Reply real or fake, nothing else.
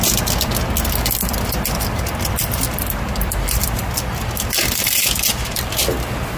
real